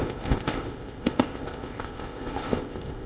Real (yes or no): no